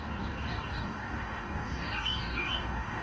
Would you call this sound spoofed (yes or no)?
yes